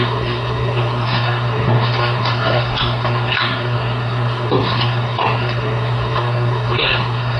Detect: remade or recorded remade